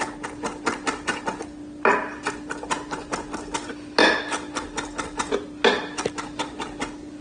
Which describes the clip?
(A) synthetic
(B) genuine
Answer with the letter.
B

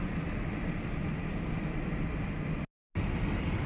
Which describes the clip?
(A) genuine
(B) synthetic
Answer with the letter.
A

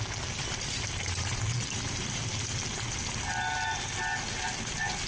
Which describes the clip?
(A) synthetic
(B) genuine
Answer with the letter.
B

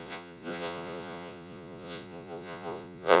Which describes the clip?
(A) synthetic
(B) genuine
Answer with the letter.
A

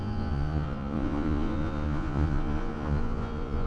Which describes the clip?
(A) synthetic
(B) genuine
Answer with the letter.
A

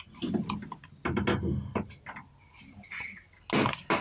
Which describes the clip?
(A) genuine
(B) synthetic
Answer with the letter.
A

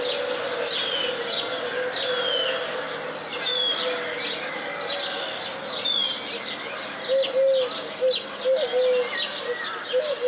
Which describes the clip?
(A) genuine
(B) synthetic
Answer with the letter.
A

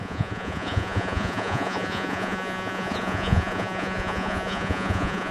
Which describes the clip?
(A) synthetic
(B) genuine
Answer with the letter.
A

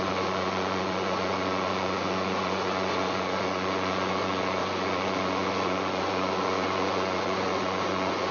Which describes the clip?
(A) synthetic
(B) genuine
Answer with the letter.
A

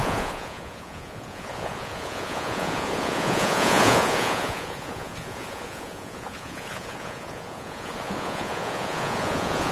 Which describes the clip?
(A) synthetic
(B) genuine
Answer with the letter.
A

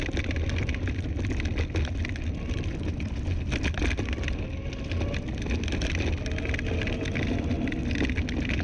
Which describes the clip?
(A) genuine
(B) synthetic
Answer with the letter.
A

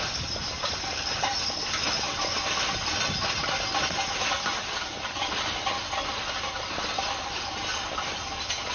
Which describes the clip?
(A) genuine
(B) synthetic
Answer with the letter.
A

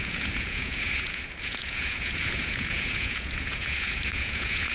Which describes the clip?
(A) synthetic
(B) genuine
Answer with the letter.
A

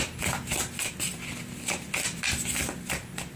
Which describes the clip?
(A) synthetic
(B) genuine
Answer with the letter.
B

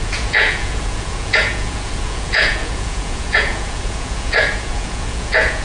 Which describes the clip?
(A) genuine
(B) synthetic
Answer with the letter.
B